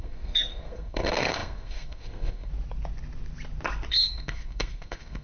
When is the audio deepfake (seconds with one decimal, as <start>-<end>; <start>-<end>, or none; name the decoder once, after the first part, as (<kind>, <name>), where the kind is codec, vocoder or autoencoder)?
0.0-2.5 (codec, SNAC); 3.9-5.2